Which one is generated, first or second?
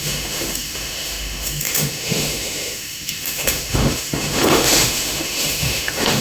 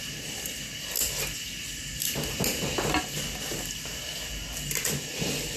first